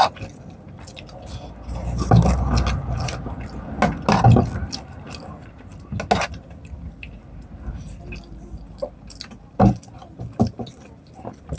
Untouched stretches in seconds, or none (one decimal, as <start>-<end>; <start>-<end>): 0.0-11.6